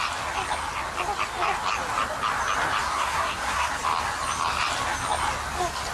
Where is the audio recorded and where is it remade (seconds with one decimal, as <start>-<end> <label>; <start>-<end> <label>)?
0.0-2.8 recorded; 2.8-3.7 remade; 3.7-5.9 recorded